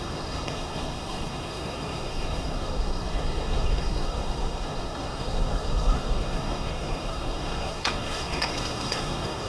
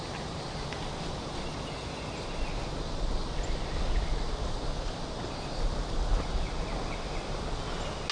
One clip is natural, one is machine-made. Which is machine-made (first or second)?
first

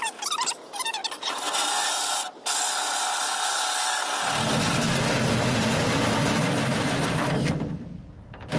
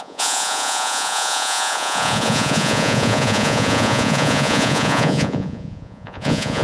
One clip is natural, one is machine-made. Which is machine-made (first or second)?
second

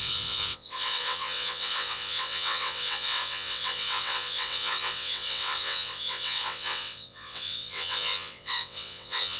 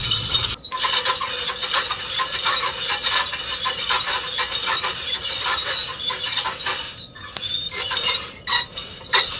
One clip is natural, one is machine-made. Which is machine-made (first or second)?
first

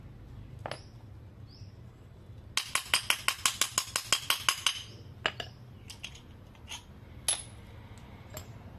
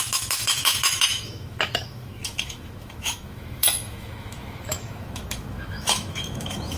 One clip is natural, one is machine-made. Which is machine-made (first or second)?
second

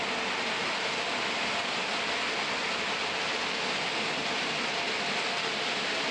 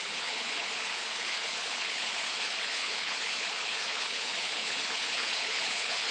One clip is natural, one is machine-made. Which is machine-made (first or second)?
second